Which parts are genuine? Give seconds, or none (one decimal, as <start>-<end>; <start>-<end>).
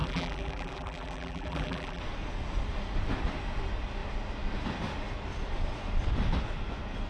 2.0-7.1